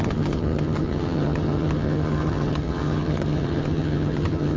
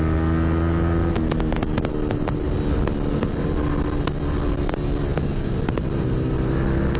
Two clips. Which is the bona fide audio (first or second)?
second